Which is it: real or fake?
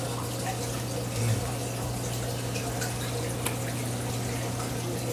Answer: real